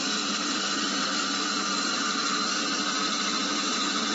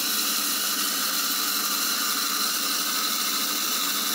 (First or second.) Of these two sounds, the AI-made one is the second